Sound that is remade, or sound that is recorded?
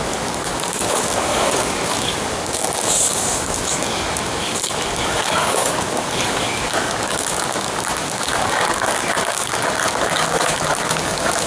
remade